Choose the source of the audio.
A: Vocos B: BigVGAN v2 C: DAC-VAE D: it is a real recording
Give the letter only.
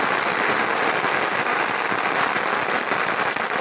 D